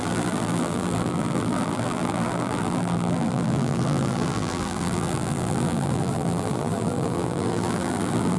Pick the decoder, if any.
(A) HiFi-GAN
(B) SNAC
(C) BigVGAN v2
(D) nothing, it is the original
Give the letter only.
C